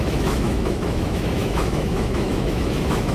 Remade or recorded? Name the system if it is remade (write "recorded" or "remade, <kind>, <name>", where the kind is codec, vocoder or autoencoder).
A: remade, autoencoder, DAC-VAE